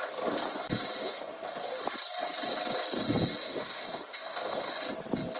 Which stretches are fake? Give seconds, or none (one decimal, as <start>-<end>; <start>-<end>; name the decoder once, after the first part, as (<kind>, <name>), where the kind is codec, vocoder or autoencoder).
1.0-1.8 (autoencoder, DAC-VAE); 3.4-4.8